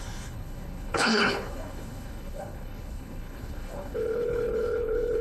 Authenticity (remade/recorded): remade